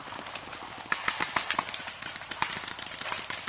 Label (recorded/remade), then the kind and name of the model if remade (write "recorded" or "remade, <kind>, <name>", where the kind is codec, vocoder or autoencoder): recorded